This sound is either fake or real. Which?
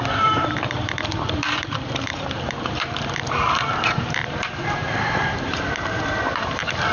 fake